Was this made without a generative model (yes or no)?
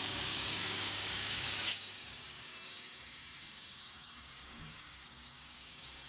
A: no